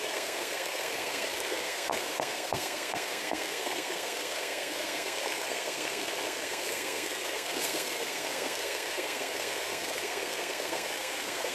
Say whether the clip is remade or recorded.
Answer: remade